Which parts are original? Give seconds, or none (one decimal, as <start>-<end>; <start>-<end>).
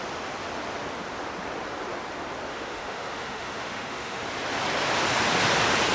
0.0-2.5; 4.2-5.9